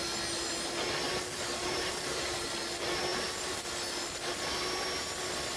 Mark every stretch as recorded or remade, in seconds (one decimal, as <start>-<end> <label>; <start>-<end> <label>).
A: 0.0-1.6 recorded; 1.6-2.5 remade; 2.5-3.1 recorded; 3.1-3.7 remade; 3.7-5.6 recorded

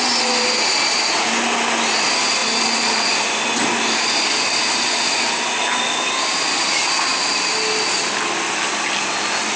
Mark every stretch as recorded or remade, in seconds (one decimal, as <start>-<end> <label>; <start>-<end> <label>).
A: 0.0-9.6 recorded